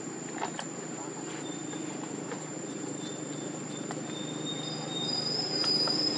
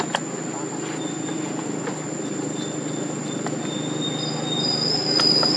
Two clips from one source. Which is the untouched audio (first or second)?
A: second